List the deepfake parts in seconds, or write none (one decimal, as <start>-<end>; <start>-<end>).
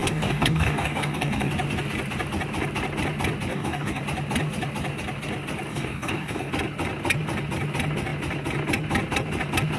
0.0-1.5; 3.5-4.0; 5.7-6.5